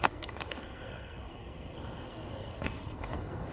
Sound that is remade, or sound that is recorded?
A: remade